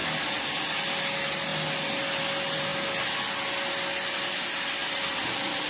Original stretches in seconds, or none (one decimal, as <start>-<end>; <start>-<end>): 0.0-4.8